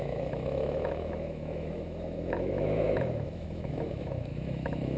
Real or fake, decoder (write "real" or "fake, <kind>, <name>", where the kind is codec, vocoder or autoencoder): fake, autoencoder, DAC-VAE